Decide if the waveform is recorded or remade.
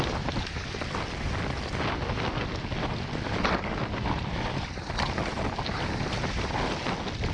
recorded